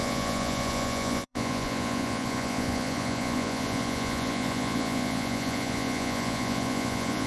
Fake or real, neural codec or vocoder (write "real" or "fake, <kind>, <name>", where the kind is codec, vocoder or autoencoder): fake, vocoder, Vocos